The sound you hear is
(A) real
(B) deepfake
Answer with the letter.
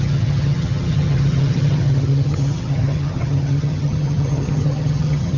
B